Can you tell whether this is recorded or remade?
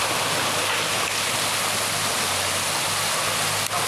recorded